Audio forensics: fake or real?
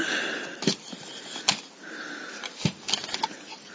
real